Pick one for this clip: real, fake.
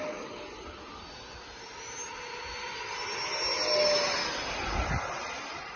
real